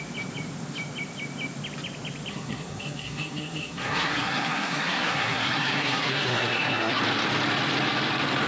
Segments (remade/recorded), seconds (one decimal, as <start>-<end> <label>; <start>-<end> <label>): 0.0-2.3 recorded; 2.3-7.0 remade; 7.0-8.5 recorded